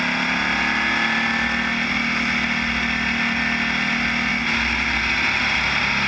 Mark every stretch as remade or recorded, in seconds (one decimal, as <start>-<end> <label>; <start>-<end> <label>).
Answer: 0.0-6.1 recorded